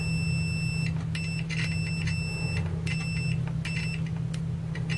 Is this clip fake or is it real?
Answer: real